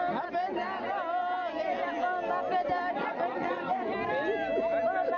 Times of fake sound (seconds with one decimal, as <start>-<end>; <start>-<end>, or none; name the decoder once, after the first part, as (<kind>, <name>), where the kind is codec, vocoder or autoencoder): 3.0-3.7 (vocoder, Vocos)

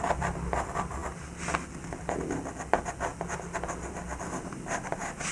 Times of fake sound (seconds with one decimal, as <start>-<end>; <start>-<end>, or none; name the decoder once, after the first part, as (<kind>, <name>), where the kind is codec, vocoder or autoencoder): 0.0-1.0 (vocoder, BigVGAN v2); 3.9-5.3

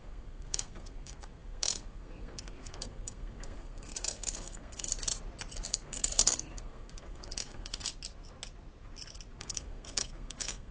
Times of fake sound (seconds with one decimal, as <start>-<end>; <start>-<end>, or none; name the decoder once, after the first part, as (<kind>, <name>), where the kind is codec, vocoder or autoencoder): 0.0-4.9 (codec, SNAC); 5.7-7.9; 9.4-10.7